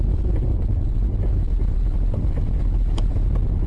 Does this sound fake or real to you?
real